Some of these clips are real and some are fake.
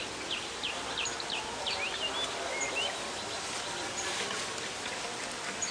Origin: real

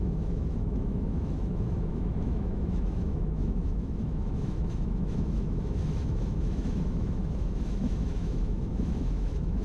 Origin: fake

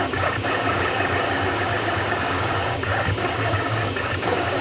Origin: fake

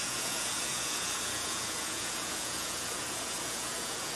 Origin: fake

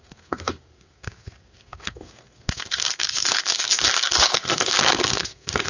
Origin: fake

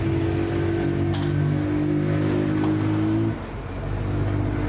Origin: real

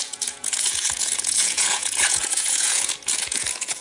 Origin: fake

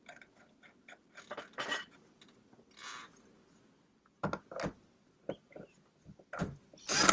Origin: real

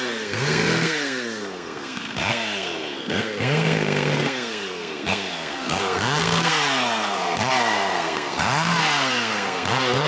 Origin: fake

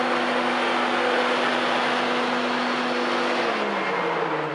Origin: real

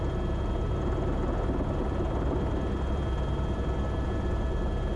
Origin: real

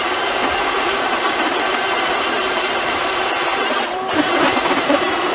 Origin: fake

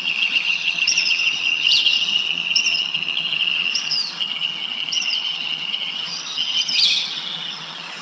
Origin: fake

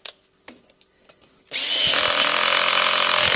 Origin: real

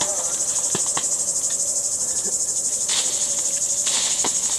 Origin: real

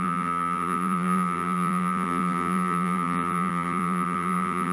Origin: fake